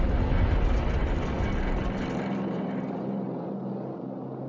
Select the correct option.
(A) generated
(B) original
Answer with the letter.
B